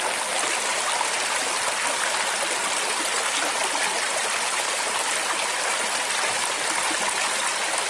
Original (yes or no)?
yes